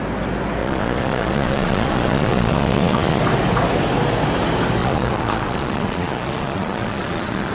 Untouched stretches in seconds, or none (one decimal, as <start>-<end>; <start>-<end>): 0.0-0.6; 3.2-4.8